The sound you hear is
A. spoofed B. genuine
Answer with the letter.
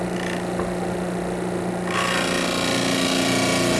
B